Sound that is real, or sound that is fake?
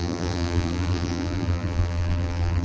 fake